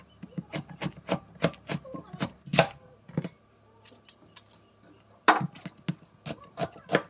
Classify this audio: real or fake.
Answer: real